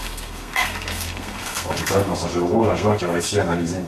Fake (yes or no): yes